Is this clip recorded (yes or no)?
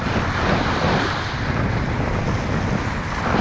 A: yes